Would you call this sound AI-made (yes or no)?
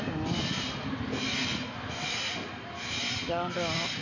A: no